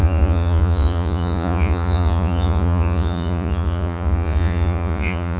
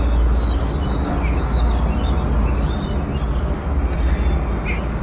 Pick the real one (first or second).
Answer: second